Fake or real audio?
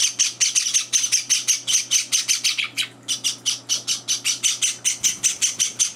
real